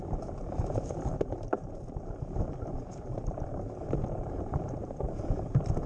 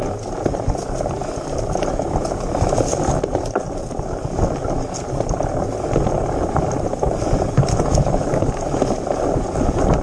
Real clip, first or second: second